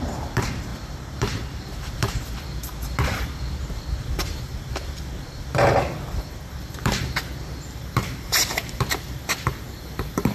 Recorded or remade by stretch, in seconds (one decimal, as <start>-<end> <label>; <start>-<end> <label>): 0.0-10.3 remade